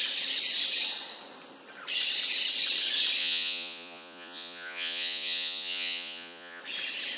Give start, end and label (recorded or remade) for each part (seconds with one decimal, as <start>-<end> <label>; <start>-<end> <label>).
0.0-3.2 recorded; 3.2-6.6 remade; 6.6-7.2 recorded